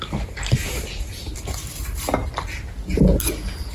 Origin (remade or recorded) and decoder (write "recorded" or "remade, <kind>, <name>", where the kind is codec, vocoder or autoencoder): recorded